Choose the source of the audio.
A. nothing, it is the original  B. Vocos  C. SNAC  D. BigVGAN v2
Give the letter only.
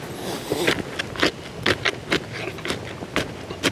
A